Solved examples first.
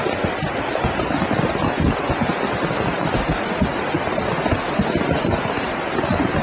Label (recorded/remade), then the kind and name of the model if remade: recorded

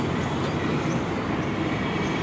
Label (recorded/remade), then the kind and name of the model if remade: recorded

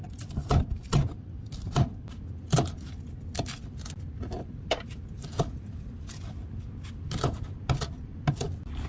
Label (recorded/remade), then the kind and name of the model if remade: recorded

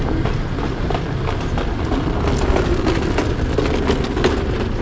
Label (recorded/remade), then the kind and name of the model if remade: recorded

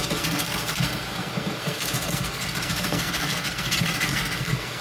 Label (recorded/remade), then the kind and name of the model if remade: remade, codec, SNAC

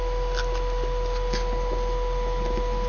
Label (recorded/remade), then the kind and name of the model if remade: recorded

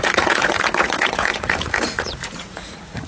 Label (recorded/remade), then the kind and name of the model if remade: remade, vocoder, Vocos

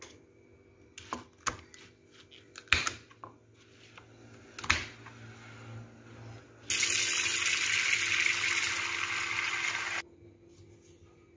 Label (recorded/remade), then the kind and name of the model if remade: recorded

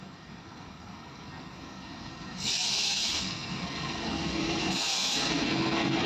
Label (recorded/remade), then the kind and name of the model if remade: remade, codec, SNAC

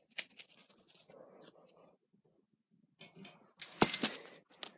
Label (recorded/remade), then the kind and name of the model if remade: recorded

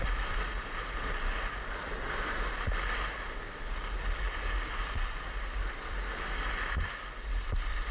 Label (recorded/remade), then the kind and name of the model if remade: recorded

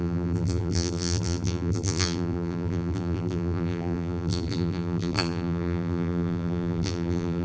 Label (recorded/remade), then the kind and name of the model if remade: remade, vocoder, BigVGAN v2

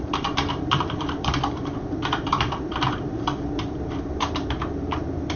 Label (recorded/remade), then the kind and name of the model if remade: remade, vocoder, BigVGAN v2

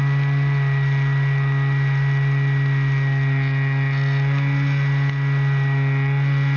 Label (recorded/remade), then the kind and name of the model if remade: recorded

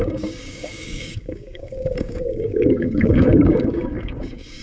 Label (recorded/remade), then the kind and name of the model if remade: remade, codec, DAC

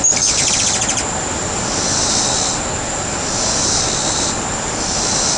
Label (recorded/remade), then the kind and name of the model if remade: recorded